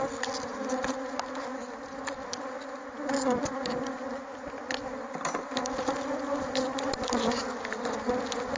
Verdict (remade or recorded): recorded